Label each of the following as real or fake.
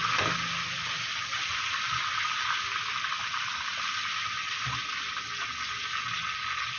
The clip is real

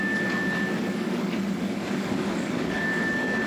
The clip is fake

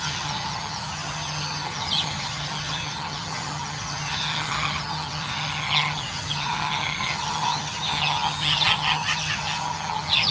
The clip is fake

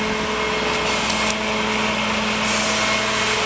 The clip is real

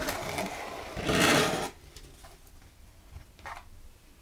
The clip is real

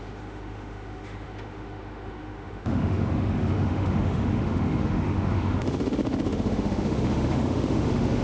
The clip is fake